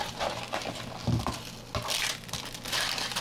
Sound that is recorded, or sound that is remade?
recorded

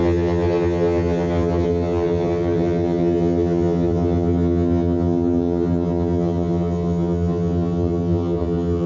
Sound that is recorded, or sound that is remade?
remade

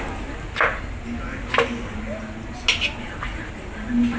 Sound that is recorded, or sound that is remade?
recorded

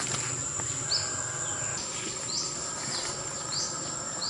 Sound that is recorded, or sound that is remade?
recorded